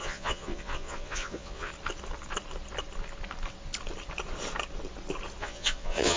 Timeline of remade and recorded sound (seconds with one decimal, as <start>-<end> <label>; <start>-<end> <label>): 0.0-1.7 remade; 1.7-5.4 recorded; 5.4-6.2 remade

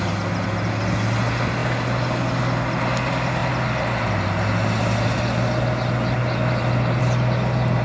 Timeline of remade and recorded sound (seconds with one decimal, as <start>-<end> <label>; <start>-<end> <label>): 0.0-7.8 recorded